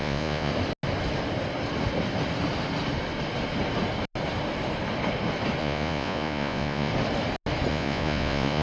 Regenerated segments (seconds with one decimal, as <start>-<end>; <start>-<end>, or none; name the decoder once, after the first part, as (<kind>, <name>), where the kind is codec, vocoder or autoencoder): 0.0-0.5 (vocoder, Vocos); 5.6-6.9; 7.7-8.6

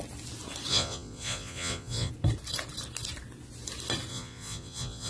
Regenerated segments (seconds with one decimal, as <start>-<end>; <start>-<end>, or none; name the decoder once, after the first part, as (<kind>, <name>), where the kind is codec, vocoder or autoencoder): 0.7-2.1 (vocoder, Vocos); 4.1-5.1

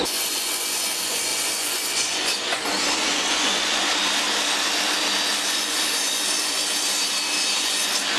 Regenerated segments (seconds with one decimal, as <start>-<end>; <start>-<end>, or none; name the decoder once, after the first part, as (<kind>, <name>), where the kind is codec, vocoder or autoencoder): 0.0-3.9 (vocoder, Vocos); 5.3-6.6; 7.6-8.2